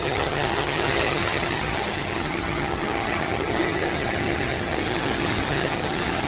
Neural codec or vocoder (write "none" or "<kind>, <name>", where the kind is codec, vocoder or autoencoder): vocoder, HiFi-GAN